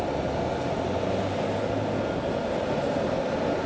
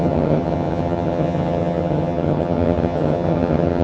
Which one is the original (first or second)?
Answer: first